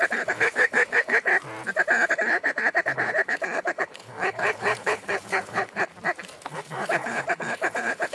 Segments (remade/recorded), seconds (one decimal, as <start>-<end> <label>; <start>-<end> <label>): 0.0-1.3 remade; 1.3-2.1 recorded; 2.1-5.9 remade; 5.9-6.5 recorded; 6.5-8.1 remade